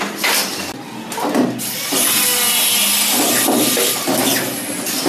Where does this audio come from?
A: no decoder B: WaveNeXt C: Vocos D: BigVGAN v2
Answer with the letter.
A